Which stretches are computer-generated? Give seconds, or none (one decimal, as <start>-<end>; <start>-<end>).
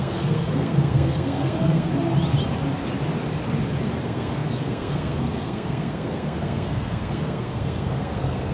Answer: 0.0-1.9; 3.9-8.5